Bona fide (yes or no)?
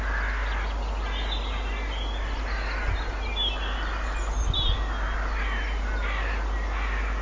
yes